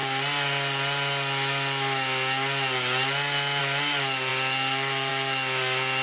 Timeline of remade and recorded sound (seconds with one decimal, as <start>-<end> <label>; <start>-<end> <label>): 0.0-6.0 recorded